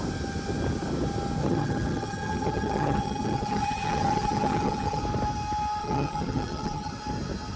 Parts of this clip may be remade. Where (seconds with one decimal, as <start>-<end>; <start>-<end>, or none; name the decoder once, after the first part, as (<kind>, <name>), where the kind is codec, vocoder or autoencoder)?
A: 1.4-5.0 (vocoder, HiFi-GAN); 5.8-6.9